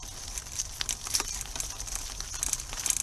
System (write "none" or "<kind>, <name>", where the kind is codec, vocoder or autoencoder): none